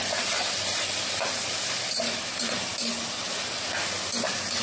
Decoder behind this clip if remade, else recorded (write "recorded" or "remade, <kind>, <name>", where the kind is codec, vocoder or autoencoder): recorded